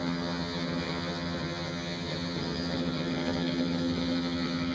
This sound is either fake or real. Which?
fake